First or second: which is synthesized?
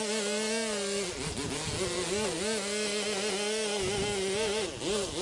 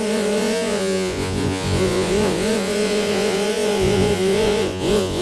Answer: second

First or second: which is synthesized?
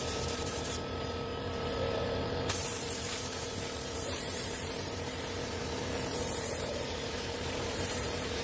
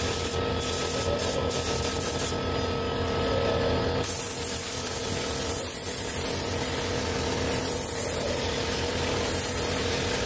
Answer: first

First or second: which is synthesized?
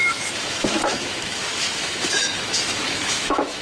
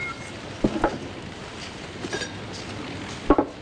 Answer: first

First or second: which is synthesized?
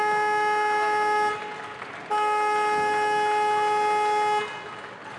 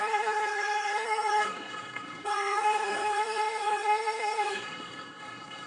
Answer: second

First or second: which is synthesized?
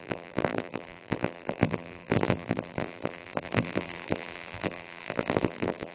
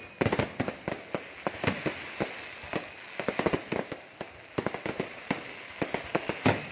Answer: first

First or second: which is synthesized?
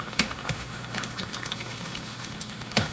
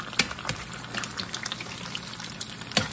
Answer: first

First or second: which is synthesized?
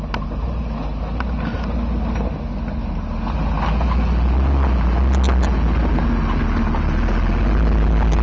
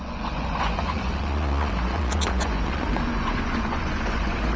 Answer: second